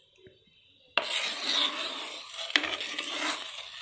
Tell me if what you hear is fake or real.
real